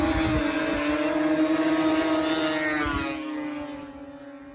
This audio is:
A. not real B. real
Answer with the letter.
B